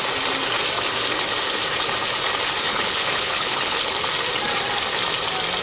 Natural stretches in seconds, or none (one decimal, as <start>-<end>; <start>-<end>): 0.0-2.7; 4.1-5.6